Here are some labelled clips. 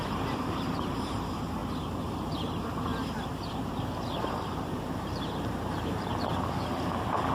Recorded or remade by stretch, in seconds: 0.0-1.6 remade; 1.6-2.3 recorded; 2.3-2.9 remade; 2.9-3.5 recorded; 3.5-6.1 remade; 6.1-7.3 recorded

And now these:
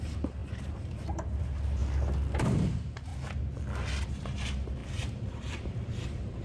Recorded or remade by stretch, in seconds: 0.0-1.8 remade; 1.8-2.4 recorded; 2.4-3.1 remade; 3.1-4.2 recorded; 4.2-6.4 remade

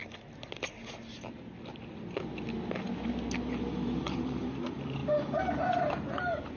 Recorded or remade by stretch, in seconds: 0.0-4.0 recorded; 4.0-6.6 remade